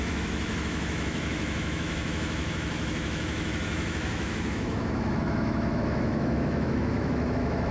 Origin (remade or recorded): remade